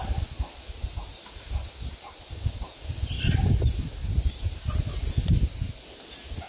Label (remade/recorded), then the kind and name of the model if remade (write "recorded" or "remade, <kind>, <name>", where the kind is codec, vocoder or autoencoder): recorded